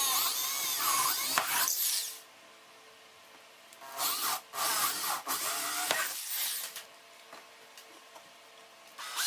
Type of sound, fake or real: real